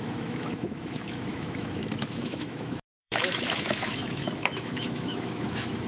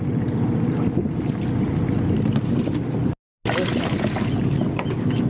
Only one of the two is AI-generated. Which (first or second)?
first